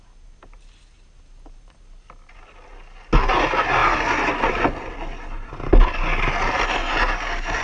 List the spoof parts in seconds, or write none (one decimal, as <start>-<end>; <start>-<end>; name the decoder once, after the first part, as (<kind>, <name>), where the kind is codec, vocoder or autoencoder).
none